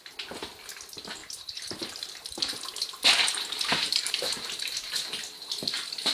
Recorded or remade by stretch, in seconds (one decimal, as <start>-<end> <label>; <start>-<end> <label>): 0.0-1.2 recorded; 1.2-4.9 remade; 4.9-6.1 recorded